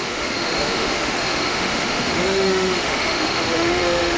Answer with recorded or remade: remade